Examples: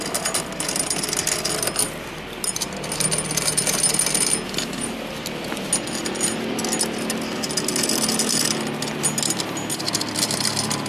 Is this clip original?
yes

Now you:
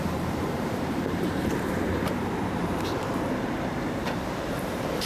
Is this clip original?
no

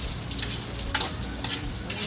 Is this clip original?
yes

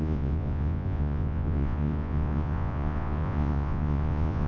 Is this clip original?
no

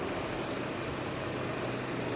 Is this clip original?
no